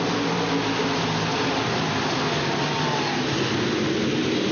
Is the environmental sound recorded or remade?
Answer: recorded